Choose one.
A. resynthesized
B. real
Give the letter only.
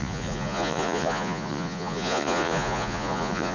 A